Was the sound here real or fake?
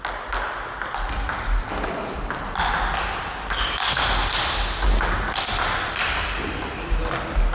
real